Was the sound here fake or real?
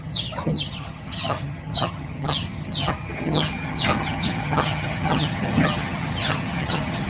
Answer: fake